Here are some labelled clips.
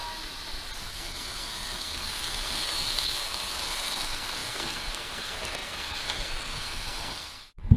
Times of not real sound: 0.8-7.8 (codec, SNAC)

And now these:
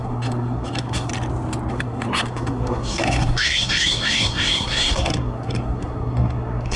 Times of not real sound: 0.0-1.1 (codec, SNAC); 1.7-6.8

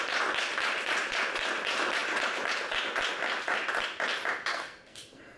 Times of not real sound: 4.5-5.4 (codec, SNAC)

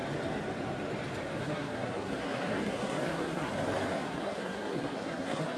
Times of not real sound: 1.4-3.5 (codec, SNAC); 3.9-5.6

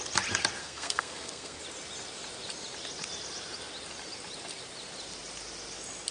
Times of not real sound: 0.6-1.6 (codec, SNAC)